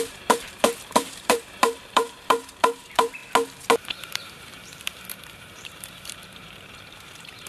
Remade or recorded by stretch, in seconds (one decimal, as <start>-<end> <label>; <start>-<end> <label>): 0.0-3.2 remade; 3.2-3.8 recorded; 3.8-7.5 remade